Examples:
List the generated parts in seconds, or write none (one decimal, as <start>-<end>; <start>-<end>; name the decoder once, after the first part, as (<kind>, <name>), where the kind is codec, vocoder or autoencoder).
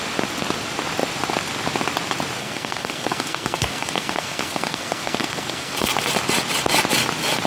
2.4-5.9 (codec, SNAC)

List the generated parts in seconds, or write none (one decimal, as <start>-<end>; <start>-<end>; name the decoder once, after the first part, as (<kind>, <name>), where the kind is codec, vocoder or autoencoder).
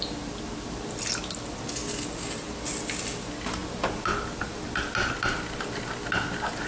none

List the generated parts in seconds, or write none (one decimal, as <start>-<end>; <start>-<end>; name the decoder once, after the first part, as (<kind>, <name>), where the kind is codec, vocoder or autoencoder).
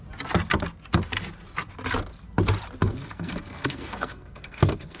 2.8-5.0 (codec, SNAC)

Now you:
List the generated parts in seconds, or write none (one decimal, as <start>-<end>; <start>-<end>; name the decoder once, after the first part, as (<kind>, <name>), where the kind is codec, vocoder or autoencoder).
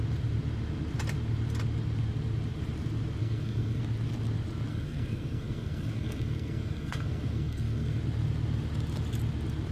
3.2-3.8 (codec, SNAC); 4.7-8.0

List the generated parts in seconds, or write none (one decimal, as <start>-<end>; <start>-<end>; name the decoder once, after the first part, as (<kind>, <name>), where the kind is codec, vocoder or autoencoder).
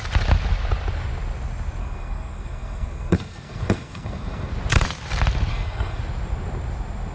1.8-4.5 (codec, SNAC); 5.5-6.0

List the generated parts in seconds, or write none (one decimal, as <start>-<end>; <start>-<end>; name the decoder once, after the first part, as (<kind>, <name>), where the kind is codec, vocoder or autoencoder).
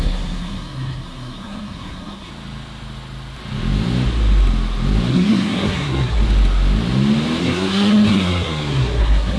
0.0-2.3 (codec, SNAC); 5.1-6.2; 7.4-9.4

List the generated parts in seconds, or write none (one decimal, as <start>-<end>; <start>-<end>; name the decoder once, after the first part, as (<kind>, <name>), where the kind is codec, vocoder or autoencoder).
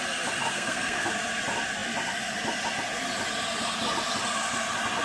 0.5-1.1 (codec, SNAC)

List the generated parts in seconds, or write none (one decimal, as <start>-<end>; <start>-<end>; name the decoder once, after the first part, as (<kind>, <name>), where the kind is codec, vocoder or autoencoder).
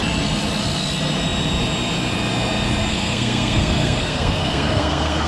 2.9-5.3 (codec, SNAC)